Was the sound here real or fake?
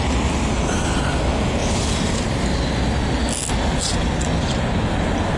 real